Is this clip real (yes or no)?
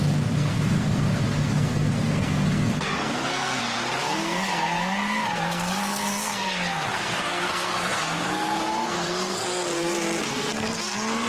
no